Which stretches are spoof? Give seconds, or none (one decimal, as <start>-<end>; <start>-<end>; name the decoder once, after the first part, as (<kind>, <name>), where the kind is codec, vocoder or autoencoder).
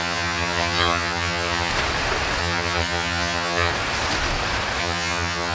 0.0-1.7 (vocoder, HiFi-GAN); 2.4-3.7; 4.8-5.5